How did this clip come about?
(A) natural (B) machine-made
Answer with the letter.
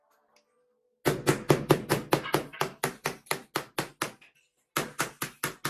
A